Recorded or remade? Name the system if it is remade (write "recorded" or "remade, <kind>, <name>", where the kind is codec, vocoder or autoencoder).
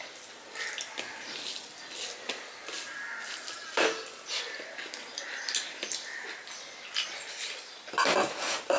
recorded